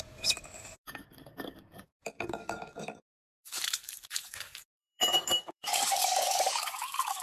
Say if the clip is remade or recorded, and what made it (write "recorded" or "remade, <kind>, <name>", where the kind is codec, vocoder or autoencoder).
remade, codec, DAC